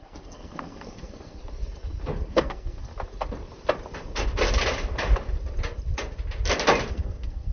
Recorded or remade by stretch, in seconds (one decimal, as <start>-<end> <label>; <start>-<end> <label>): 0.0-1.4 remade; 1.4-2.3 recorded; 2.3-2.9 remade; 2.9-6.9 recorded; 6.9-7.5 remade